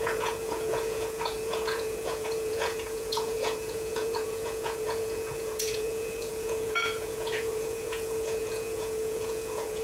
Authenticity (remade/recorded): remade